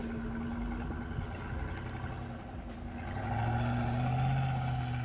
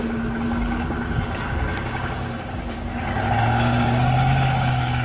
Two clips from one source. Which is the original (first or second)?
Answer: first